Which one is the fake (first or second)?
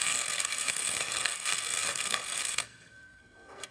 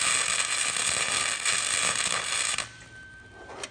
first